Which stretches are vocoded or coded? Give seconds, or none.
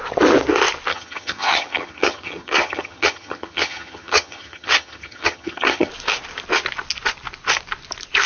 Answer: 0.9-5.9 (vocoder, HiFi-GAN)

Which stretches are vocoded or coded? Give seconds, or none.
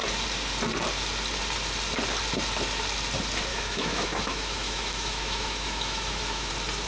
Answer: 3.5-6.5 (autoencoder, DAC-VAE)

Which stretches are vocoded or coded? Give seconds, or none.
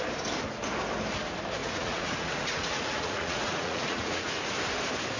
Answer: 1.6-4.5 (vocoder, Vocos)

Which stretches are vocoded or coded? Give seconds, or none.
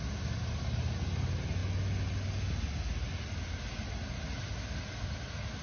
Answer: none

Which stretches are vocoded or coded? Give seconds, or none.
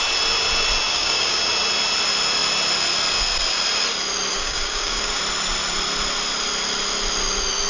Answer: 0.9-1.4 (codec, DAC); 4.3-5.2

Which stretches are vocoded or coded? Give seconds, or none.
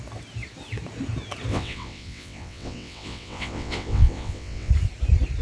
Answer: 1.5-4.7 (vocoder, WaveNeXt)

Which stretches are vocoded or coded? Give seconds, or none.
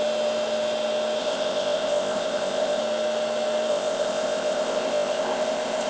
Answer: 1.2-2.8 (codec, ZipCodec); 3.7-5.9